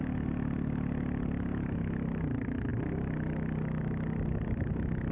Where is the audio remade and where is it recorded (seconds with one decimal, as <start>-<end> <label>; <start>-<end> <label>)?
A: 0.0-5.1 recorded

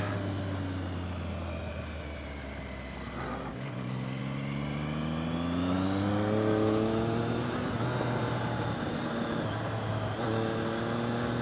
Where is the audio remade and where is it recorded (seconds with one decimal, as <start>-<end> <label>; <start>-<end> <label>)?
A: 0.0-3.5 recorded; 3.5-4.2 remade; 4.2-11.4 recorded

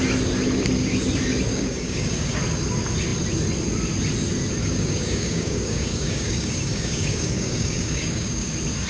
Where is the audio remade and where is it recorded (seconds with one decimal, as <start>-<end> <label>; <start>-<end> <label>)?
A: 0.0-1.5 recorded; 1.5-2.4 remade; 2.4-4.6 recorded; 4.6-8.5 remade; 8.5-8.9 recorded

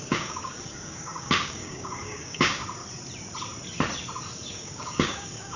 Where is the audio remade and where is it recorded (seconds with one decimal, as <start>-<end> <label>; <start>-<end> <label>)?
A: 0.0-2.6 remade; 2.6-4.5 recorded; 4.5-5.6 remade

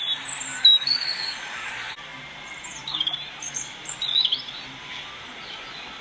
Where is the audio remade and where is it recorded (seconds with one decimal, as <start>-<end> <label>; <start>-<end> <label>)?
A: 0.0-0.5 recorded; 0.5-1.7 remade; 1.7-6.0 recorded

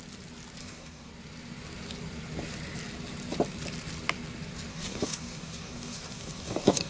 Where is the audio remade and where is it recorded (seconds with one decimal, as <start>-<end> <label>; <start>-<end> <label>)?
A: 0.0-0.6 recorded; 0.6-1.1 remade; 1.1-4.7 recorded; 4.7-6.9 remade